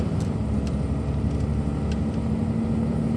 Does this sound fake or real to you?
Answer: real